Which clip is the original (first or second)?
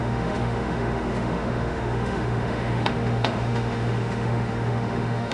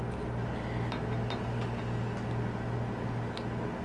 second